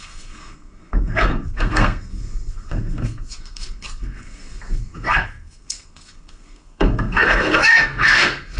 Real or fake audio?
fake